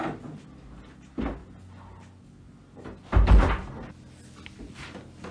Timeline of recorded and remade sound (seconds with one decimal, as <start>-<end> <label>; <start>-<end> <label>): 0.0-5.3 recorded